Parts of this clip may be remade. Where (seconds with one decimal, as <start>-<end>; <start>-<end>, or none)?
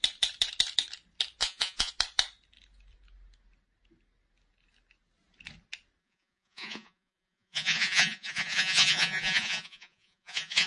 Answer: 1.4-1.9; 6.0-10.7